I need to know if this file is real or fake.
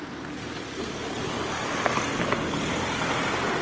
real